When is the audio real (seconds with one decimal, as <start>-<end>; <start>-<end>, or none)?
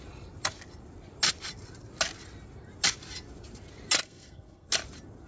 0.0-4.0; 4.7-5.3